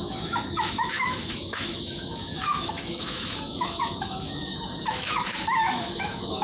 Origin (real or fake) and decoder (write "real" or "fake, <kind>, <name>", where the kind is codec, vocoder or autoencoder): fake, autoencoder, DAC-VAE